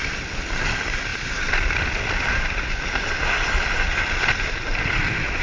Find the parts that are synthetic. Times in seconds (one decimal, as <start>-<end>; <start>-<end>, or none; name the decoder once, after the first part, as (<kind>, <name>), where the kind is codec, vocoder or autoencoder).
none